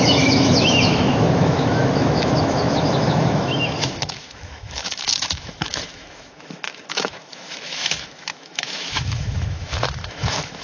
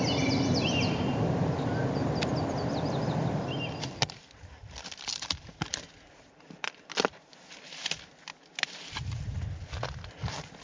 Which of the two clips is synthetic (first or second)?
first